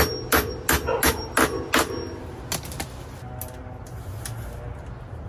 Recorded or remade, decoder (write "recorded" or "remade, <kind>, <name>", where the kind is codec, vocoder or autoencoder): recorded